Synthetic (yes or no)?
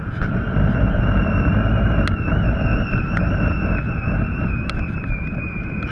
no